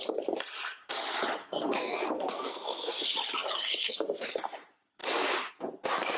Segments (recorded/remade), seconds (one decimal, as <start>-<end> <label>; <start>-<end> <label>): 0.0-1.4 recorded; 1.4-3.0 remade; 3.0-6.2 recorded